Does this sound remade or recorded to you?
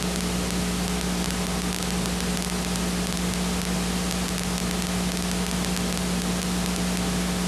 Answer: recorded